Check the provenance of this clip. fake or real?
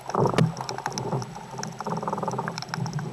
real